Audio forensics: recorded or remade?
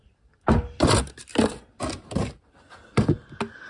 recorded